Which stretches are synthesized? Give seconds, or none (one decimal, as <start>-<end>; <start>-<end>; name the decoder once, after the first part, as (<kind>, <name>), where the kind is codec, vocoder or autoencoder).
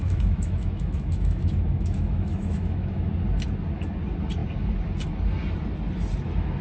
0.0-3.1 (autoencoder, DAC-VAE)